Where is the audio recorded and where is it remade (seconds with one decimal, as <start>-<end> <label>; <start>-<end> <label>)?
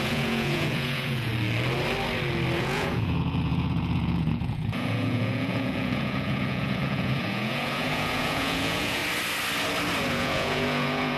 0.0-1.3 remade; 1.3-2.6 recorded; 2.6-9.0 remade; 9.0-10.1 recorded; 10.1-11.2 remade